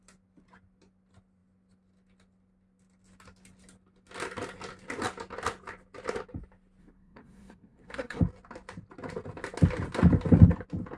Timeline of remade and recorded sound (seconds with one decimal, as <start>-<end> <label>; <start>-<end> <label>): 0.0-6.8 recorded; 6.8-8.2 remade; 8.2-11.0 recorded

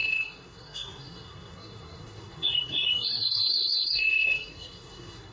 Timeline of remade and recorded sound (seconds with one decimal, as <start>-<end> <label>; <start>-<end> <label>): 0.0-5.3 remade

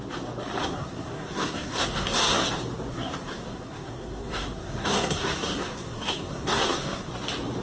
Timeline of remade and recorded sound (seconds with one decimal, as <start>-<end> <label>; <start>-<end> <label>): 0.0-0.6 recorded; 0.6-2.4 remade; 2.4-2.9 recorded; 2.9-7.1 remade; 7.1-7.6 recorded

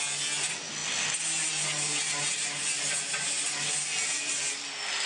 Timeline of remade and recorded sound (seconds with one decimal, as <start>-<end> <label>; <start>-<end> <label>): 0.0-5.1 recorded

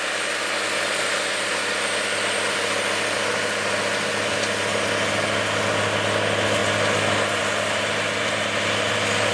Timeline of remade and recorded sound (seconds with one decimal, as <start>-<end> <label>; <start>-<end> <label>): 0.0-9.3 recorded

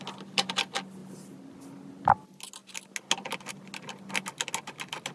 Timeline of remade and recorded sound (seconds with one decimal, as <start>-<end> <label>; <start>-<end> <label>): 0.0-5.1 recorded

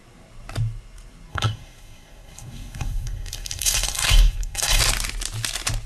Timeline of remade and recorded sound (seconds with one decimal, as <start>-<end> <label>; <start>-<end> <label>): 0.0-1.3 recorded; 1.3-4.8 remade; 4.8-5.9 recorded